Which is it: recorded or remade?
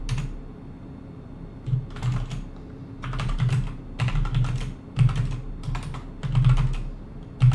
recorded